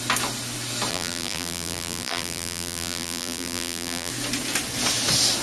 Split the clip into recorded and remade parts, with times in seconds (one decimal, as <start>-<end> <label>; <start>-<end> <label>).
0.0-0.9 recorded; 0.9-4.1 remade; 4.1-5.4 recorded